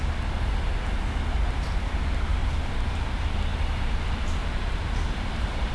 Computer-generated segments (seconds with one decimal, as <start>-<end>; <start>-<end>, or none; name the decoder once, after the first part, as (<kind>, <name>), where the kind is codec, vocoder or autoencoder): 2.4-3.0 (vocoder, BigVGAN v2); 3.5-5.7